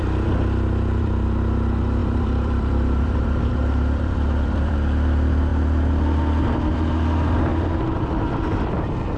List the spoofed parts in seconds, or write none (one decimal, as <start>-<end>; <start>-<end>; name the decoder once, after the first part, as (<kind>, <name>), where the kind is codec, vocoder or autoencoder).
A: 0.0-5.5 (vocoder, BigVGAN v2); 6.6-7.5